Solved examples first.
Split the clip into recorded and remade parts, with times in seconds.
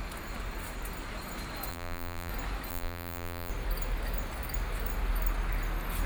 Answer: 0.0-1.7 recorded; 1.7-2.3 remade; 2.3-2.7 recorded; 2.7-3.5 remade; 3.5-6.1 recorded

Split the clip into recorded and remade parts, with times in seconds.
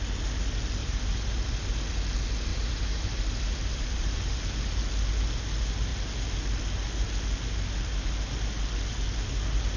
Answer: 0.0-0.8 recorded; 0.8-1.5 remade; 1.5-2.5 recorded; 2.5-4.9 remade; 4.9-9.8 recorded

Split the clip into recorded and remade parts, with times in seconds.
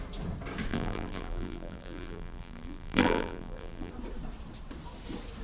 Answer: 0.0-0.7 recorded; 0.7-3.9 remade; 3.9-5.4 recorded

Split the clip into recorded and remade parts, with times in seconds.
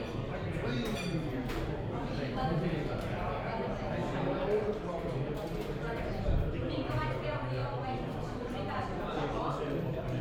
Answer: 0.0-10.2 remade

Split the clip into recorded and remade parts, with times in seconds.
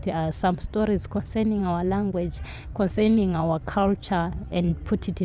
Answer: 0.0-1.6 recorded; 1.6-4.7 remade; 4.7-5.2 recorded